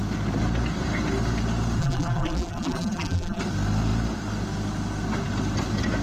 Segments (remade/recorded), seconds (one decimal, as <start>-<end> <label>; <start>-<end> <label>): 0.0-1.8 recorded; 1.8-3.4 remade; 3.4-6.0 recorded